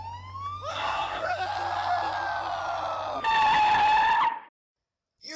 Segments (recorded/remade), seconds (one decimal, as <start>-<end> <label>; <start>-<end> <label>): 0.0-0.7 recorded; 0.7-1.3 remade; 1.3-5.4 recorded